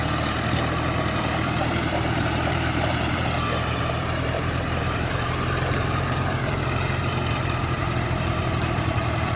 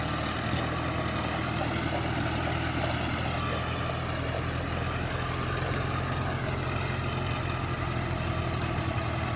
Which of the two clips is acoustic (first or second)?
second